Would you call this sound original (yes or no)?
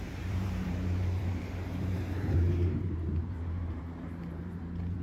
no